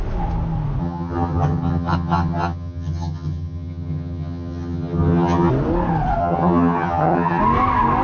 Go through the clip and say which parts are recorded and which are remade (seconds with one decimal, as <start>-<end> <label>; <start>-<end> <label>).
0.0-0.8 recorded; 0.8-5.5 remade; 5.5-6.2 recorded; 6.2-7.4 remade; 7.4-8.0 recorded